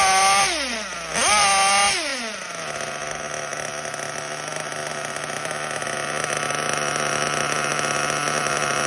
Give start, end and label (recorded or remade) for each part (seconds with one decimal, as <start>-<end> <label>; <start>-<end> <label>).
0.0-8.9 recorded